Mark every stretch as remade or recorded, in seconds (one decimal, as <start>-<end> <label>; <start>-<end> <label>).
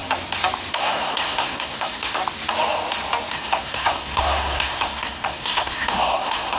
0.0-0.7 recorded; 0.7-2.2 remade; 2.2-3.3 recorded; 3.3-6.6 remade